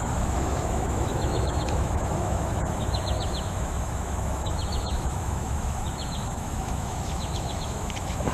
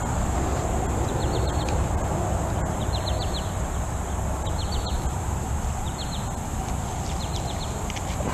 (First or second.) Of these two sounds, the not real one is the first